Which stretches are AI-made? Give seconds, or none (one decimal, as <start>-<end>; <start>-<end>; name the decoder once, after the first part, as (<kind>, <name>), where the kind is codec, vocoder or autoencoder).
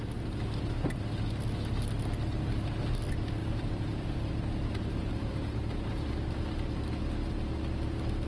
3.4-4.3 (vocoder, BigVGAN v2); 5.0-6.1